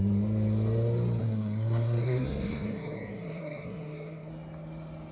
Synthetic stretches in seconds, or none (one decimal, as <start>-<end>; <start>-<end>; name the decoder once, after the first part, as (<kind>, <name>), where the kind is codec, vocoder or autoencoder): 1.2-4.3 (codec, SNAC)